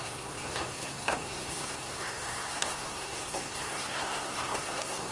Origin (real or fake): fake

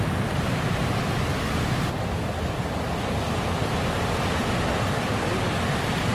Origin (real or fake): real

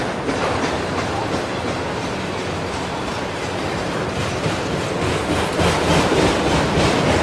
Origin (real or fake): real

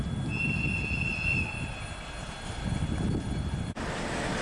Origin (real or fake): real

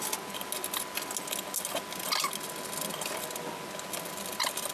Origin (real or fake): real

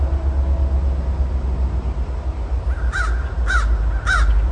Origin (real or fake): real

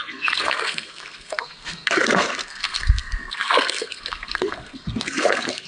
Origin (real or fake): fake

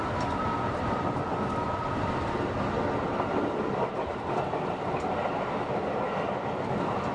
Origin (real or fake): real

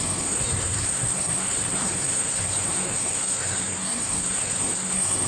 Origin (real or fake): fake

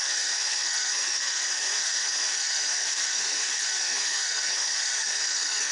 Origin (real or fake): fake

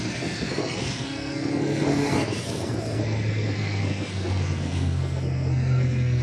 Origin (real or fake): fake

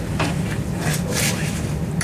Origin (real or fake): real